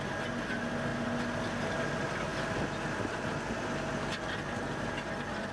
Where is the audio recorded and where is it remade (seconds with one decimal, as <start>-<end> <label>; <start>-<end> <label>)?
0.0-5.5 recorded